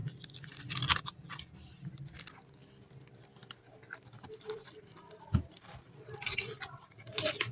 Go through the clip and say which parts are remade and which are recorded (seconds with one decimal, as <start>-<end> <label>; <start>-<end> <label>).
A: 0.0-7.5 recorded